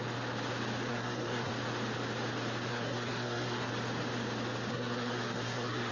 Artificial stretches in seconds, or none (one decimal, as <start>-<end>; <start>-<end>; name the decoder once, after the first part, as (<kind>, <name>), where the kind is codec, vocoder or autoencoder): 0.9-1.5 (codec, SNAC); 2.7-3.7; 4.7-5.9